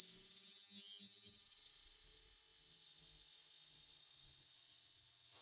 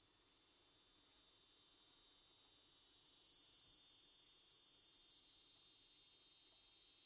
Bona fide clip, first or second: second